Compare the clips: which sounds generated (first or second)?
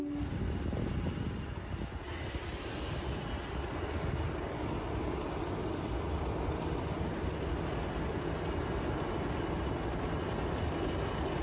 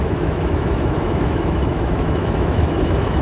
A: second